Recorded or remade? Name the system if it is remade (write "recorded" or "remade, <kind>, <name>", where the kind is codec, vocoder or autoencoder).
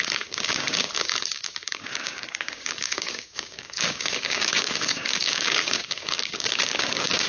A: remade, codec, DAC